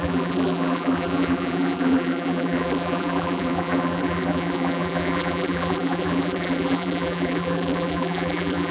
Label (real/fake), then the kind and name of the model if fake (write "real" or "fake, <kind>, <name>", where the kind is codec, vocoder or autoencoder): fake, vocoder, BigVGAN v2